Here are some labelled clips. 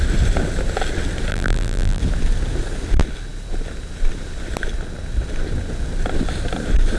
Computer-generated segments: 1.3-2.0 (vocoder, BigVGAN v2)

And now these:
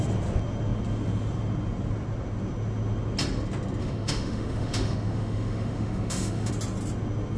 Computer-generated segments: 3.8-6.5 (autoencoder, DAC-VAE)

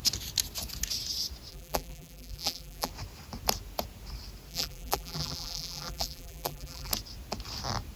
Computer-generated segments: 1.5-2.9 (vocoder, BigVGAN v2); 4.5-6.9

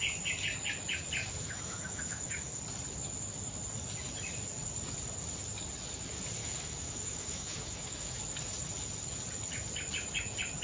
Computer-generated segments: 1.2-2.6 (autoencoder, DAC-VAE); 6.4-8.2

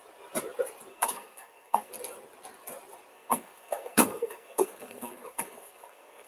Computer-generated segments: 0.9-1.9 (codec, SNAC); 3.1-6.3

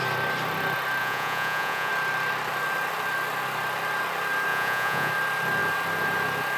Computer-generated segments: 1.0-1.9 (vocoder, Vocos); 4.5-5.1

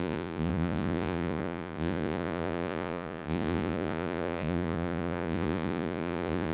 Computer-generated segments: 0.0-6.5 (vocoder, Vocos)